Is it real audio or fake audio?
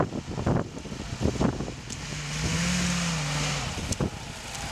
real